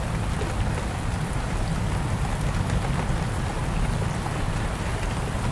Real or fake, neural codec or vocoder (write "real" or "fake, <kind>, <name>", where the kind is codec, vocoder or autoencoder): real